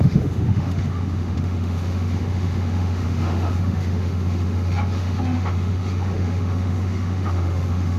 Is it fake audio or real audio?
fake